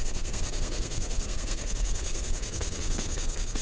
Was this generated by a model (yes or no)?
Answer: yes